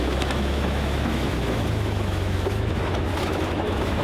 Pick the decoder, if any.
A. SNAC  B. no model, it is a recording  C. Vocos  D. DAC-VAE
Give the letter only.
D